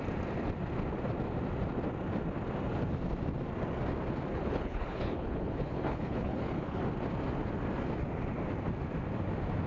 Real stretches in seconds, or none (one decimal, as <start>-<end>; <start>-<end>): 0.0-4.3; 6.8-9.7